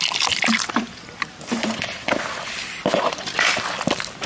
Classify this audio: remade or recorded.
recorded